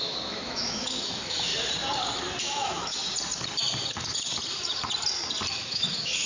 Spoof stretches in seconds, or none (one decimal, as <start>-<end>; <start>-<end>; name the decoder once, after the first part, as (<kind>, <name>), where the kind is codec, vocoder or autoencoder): 0.0-1.5 (autoencoder, DAC-VAE); 2.4-3.0; 5.5-6.3